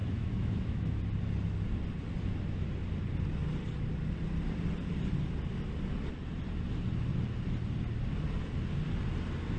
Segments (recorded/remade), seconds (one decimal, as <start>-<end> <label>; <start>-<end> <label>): 0.0-1.0 remade; 1.0-9.6 recorded